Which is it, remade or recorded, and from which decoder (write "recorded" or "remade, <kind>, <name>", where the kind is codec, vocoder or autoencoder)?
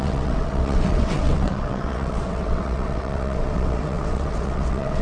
remade, vocoder, WaveNeXt